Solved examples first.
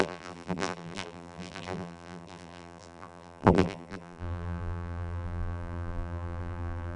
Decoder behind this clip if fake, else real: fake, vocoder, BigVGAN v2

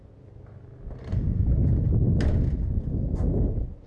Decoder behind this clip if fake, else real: real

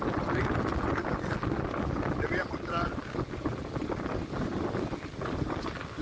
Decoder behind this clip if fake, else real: real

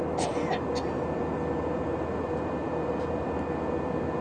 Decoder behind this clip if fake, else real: real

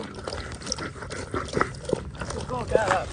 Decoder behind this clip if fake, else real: real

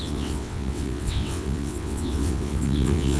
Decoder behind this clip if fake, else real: fake, vocoder, WaveNeXt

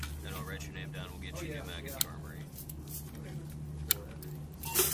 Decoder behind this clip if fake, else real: real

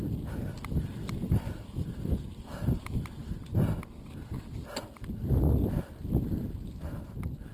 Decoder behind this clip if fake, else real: real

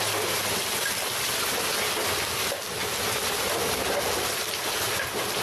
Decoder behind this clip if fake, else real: real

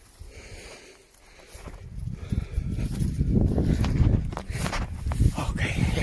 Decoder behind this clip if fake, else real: real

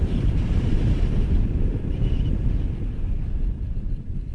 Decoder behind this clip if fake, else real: fake, vocoder, BigVGAN v2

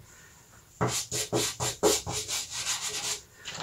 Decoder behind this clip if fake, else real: real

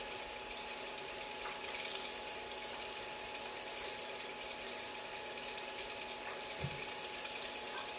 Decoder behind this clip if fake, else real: real